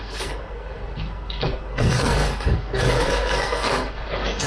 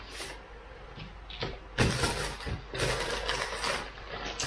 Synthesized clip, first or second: first